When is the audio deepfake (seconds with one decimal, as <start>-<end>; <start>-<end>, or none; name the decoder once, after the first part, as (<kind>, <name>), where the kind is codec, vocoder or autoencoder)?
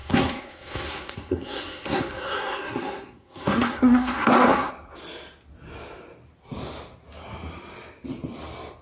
0.0-4.7 (codec, SNAC)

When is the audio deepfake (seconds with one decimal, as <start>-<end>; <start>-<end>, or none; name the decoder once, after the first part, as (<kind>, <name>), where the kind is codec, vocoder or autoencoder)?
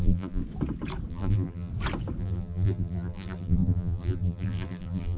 0.0-0.4 (vocoder, BigVGAN v2); 1.1-1.7; 2.2-5.2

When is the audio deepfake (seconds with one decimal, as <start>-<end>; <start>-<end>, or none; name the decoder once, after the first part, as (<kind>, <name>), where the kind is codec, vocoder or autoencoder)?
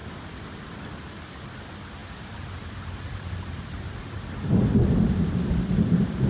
0.0-0.9 (vocoder, BigVGAN v2); 2.0-5.3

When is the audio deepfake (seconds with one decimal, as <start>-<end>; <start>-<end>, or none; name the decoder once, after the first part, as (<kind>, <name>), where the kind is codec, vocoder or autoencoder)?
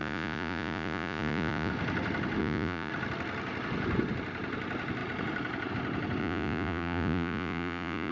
0.0-1.7 (vocoder, Vocos); 2.4-2.9; 6.2-8.1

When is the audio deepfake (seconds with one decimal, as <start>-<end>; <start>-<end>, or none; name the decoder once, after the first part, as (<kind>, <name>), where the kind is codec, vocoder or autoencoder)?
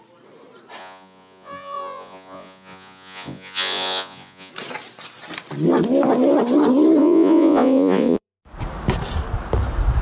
0.8-4.5 (vocoder, Vocos); 7.0-8.4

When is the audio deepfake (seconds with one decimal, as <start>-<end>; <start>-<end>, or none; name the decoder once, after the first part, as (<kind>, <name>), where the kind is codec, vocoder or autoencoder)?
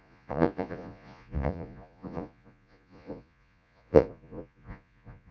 0.0-5.3 (vocoder, Vocos)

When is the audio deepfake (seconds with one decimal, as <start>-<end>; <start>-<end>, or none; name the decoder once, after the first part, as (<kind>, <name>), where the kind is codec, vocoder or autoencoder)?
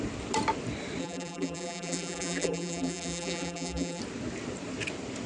1.0-4.0 (vocoder, BigVGAN v2)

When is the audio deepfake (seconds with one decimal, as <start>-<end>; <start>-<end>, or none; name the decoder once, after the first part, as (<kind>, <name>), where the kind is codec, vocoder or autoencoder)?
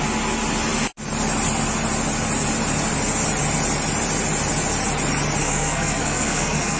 5.4-6.8 (codec, SNAC)